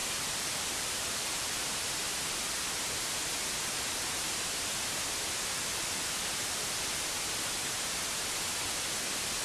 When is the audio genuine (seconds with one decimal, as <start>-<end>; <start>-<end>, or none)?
1.6-5.7; 7.1-9.4